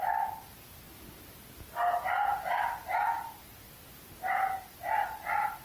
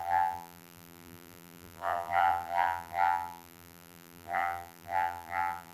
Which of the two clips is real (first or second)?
first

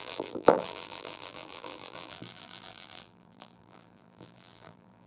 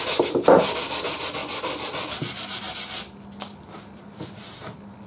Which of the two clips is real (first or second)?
second